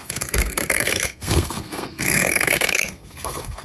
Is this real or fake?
fake